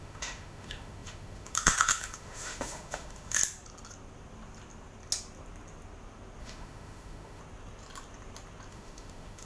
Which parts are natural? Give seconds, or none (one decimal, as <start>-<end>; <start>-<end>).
3.4-6.4; 7.4-8.7